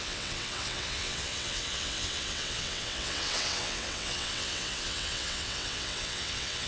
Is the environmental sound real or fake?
fake